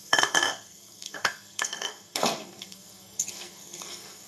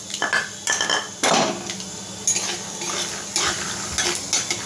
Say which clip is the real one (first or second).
second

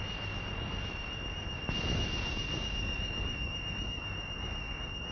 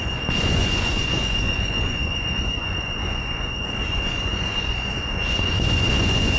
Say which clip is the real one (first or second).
first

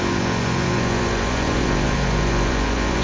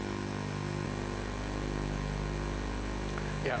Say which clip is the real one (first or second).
second